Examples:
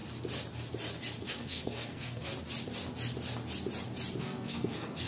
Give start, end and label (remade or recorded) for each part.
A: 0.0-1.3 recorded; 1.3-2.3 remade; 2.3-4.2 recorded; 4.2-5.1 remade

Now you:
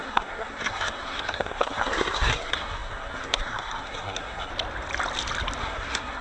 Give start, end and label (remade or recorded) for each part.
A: 0.0-4.5 remade; 4.5-5.6 recorded; 5.6-6.2 remade

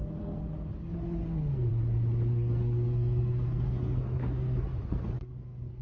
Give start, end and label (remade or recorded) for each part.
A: 0.0-0.5 remade; 0.5-1.2 recorded; 1.2-1.7 remade; 1.7-2.3 recorded; 2.3-5.8 remade

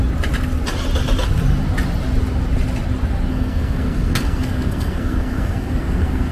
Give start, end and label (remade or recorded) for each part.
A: 0.0-3.3 recorded; 3.3-6.3 remade

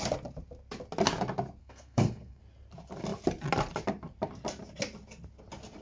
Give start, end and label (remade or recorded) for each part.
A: 0.0-1.6 recorded; 1.6-2.4 remade; 2.4-5.8 recorded

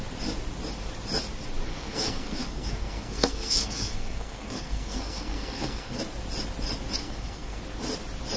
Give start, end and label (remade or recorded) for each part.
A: 0.0-1.7 recorded; 1.7-6.0 remade; 6.0-7.0 recorded; 7.0-7.6 remade; 7.6-8.4 recorded

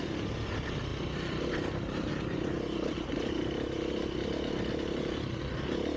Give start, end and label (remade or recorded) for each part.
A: 0.0-6.0 recorded